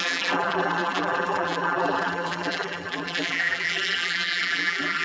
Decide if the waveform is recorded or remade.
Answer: remade